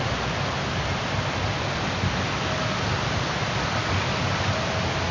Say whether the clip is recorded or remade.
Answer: recorded